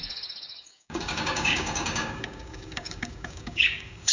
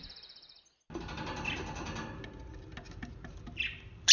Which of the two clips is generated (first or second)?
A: first